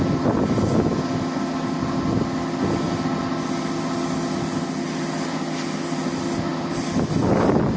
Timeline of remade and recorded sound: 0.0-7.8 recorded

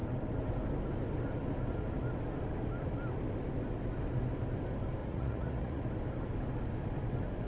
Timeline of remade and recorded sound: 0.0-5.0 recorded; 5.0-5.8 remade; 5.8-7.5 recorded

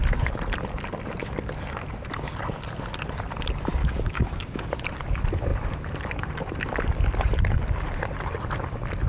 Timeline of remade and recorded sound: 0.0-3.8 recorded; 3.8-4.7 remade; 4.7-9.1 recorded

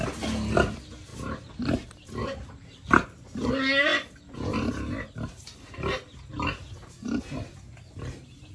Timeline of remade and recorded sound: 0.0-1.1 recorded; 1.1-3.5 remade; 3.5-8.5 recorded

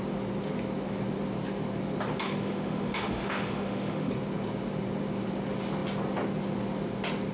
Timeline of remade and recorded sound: 0.0-2.2 recorded; 2.2-4.1 remade; 4.1-7.3 recorded